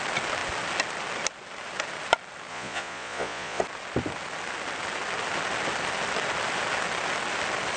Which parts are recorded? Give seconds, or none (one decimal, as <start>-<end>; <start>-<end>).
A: 0.0-2.5; 3.6-7.8